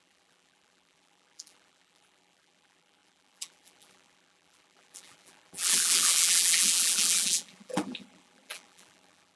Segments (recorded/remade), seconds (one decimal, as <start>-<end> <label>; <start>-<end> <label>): 0.0-9.4 remade